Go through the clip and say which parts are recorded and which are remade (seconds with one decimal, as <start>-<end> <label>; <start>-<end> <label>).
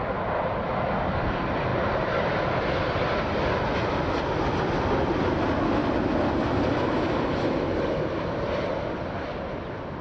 0.0-10.0 recorded